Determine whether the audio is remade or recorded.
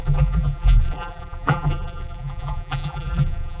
remade